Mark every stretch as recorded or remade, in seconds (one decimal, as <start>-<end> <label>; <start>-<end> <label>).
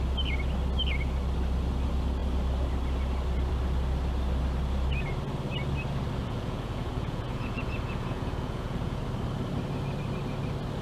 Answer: 0.0-6.2 recorded; 6.2-9.0 remade; 9.0-10.8 recorded